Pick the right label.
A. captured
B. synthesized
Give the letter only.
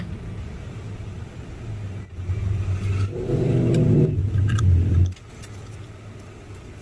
A